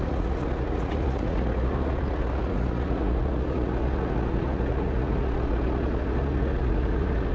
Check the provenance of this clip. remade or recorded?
remade